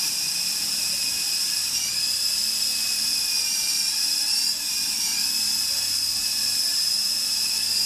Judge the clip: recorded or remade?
recorded